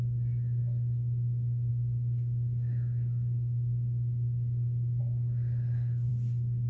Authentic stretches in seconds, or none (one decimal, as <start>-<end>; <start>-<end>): 0.0-6.7

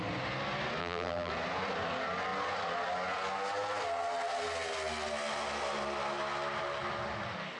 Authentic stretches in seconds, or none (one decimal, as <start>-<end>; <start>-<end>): 0.0-0.8; 1.3-7.6

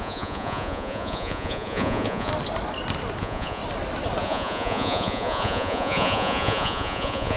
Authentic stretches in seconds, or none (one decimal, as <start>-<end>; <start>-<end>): 2.3-3.2; 3.6-4.2